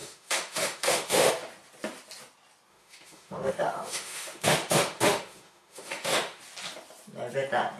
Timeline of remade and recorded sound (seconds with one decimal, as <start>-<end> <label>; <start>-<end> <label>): 0.0-1.3 remade; 1.3-2.7 recorded; 2.7-6.4 remade; 6.4-7.8 recorded